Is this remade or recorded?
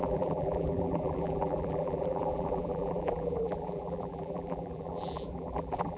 remade